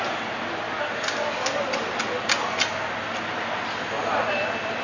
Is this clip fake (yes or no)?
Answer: no